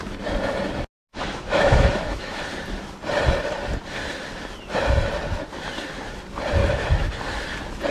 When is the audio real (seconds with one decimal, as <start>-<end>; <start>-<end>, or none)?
0.0-1.1; 2.4-6.6; 7.1-7.9